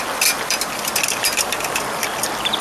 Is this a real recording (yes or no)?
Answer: no